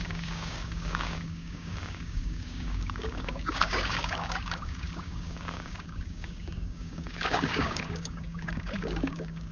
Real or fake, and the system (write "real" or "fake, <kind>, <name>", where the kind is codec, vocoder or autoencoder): fake, codec, DAC